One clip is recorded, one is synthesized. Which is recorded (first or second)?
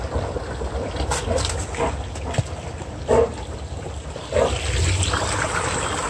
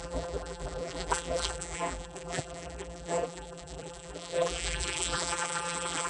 first